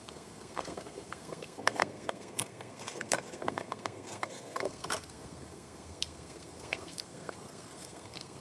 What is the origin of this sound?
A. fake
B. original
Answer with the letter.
A